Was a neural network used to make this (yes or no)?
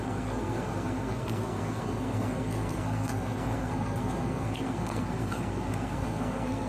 yes